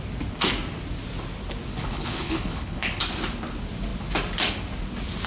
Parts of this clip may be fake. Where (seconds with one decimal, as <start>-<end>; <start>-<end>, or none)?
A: 1.7-3.0